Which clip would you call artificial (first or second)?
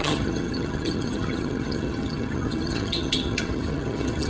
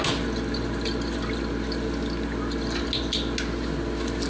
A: first